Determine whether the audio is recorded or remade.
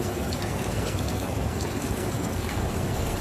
remade